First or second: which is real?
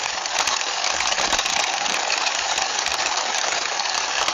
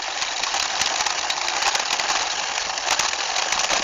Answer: second